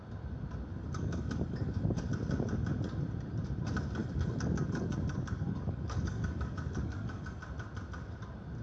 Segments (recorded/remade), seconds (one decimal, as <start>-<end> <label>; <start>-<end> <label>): 0.0-0.7 recorded; 0.7-2.0 remade; 2.0-4.0 recorded; 4.0-7.4 remade; 7.4-8.6 recorded